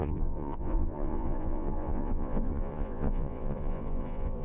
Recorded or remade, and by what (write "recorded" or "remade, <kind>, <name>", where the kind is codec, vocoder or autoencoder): remade, vocoder, Vocos